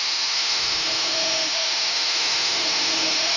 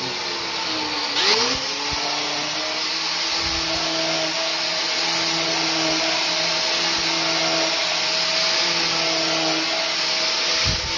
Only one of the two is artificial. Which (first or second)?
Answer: first